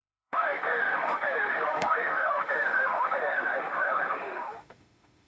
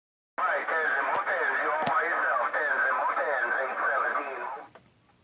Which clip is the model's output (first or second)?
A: first